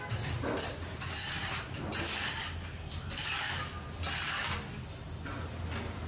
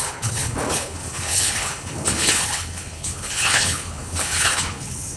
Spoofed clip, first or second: second